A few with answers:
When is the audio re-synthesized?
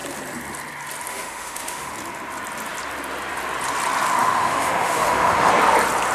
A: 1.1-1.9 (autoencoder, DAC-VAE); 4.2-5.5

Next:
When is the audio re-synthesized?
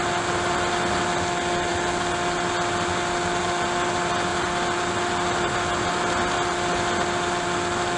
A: none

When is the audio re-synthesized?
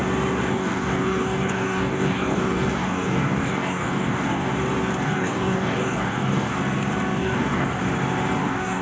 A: 0.5-4.5 (codec, DAC); 5.0-6.6; 7.2-7.8; 8.4-8.8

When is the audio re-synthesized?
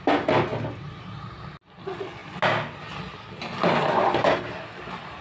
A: none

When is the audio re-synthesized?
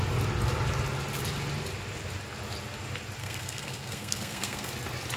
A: 3.2-4.7 (codec, SNAC)